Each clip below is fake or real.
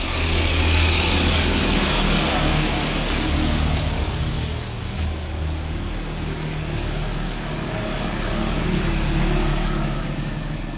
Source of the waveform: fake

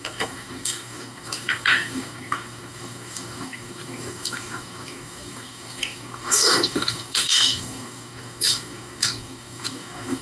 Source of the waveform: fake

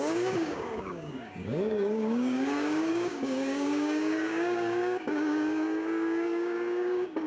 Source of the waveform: fake